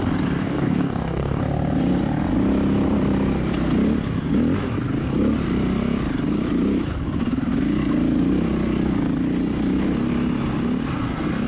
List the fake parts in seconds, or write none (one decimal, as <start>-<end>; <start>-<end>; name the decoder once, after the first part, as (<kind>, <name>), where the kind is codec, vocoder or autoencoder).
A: 0.4-1.4 (codec, DAC)